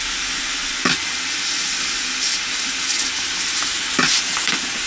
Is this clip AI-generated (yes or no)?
no